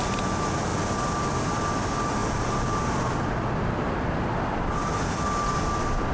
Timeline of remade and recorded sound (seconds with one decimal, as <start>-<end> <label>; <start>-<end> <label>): 0.0-6.1 recorded

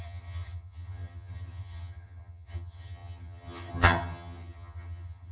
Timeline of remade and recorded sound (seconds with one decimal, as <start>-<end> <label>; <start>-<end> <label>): 0.0-5.3 remade

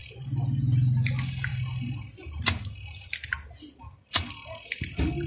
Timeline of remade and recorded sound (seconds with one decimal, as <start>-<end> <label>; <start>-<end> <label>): 0.0-5.3 recorded

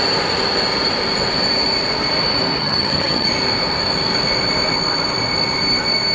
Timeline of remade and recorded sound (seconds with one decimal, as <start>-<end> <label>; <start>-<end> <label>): 0.0-2.6 recorded; 2.6-3.3 remade; 3.3-6.1 recorded